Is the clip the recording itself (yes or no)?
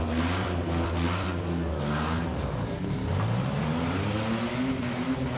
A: yes